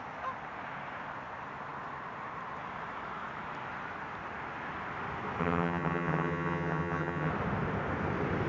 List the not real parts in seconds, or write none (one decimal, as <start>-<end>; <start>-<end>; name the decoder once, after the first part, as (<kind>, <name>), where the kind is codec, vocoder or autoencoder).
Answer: 5.4-7.3 (vocoder, HiFi-GAN)